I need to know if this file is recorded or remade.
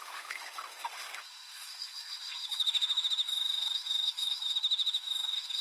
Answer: remade